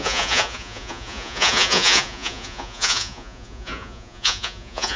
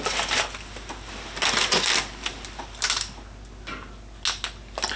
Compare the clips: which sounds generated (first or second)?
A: first